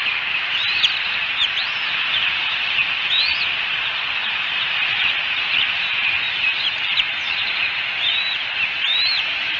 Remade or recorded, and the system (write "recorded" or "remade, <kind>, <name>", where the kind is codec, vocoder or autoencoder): remade, vocoder, BigVGAN v2